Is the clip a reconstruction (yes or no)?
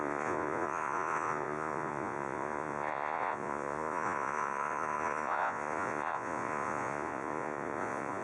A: yes